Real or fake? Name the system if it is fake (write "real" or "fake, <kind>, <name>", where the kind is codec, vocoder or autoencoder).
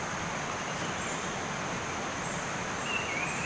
real